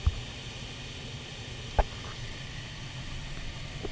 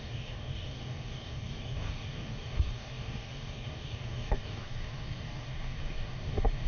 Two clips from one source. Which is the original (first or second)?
first